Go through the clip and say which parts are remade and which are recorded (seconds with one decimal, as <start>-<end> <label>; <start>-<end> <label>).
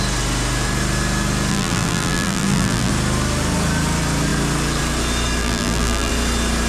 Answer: 0.0-1.5 recorded; 1.5-2.9 remade; 2.9-5.4 recorded; 5.4-6.1 remade; 6.1-6.7 recorded